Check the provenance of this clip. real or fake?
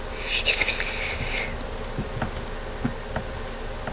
real